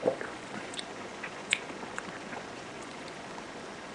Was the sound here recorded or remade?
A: remade